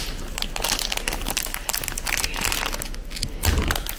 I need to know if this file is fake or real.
real